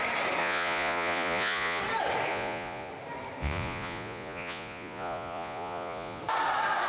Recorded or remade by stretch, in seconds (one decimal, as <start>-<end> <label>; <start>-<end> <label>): 0.0-0.4 recorded; 0.4-1.8 remade; 1.8-2.3 recorded; 2.3-2.9 remade; 2.9-3.4 recorded; 3.4-6.2 remade; 6.2-6.9 recorded